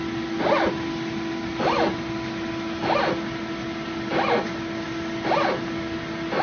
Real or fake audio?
real